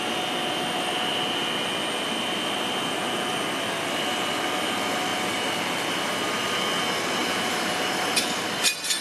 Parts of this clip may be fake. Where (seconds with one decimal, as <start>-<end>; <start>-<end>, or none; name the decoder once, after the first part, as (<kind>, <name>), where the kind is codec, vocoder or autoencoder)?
5.1-5.9 (vocoder, BigVGAN v2); 7.2-7.8